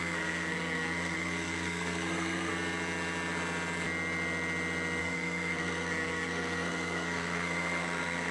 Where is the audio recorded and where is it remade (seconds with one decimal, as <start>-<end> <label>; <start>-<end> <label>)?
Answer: 0.0-2.5 remade; 2.5-5.0 recorded; 5.0-8.3 remade